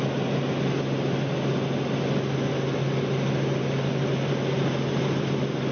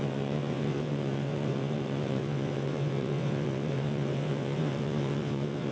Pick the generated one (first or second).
second